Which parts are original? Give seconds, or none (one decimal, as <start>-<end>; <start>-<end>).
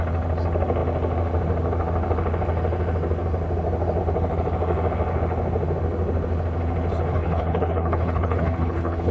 0.0-7.1